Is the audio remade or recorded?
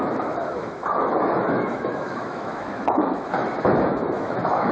remade